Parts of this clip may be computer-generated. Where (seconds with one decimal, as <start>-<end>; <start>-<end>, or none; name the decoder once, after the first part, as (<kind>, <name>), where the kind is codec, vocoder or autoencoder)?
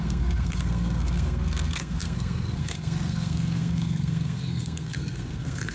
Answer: 0.0-5.7 (codec, SNAC)